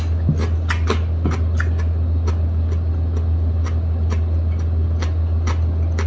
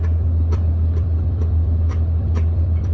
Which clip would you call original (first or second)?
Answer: first